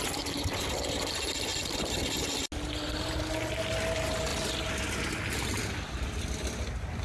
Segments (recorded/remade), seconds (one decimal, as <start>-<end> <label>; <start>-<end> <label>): 0.0-7.0 recorded